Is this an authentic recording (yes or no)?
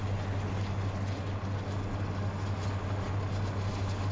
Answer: yes